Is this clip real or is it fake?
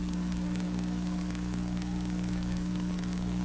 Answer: fake